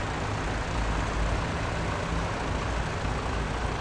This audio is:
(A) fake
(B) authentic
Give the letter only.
B